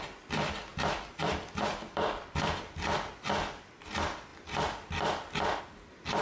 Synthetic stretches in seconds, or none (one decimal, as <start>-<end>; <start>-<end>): 0.7-3.3